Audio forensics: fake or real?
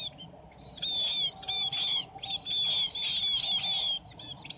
real